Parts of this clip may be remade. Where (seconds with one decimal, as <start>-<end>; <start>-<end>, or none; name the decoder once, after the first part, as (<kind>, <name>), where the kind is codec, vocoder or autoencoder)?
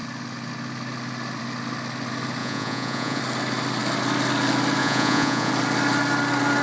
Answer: 2.4-3.2 (vocoder, Vocos); 4.8-5.5